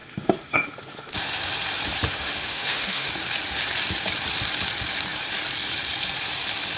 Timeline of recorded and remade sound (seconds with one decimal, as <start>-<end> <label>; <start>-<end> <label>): 0.0-1.1 remade; 1.1-2.1 recorded; 2.1-3.1 remade; 3.1-6.8 recorded